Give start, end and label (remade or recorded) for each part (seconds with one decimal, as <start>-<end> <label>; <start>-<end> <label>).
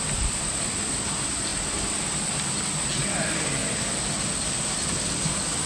0.0-5.7 recorded